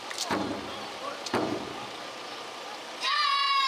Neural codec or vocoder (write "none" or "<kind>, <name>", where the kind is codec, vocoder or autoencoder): none